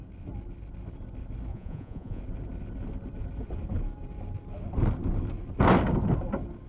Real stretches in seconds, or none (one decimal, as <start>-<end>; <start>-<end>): 0.0-1.5; 2.2-6.7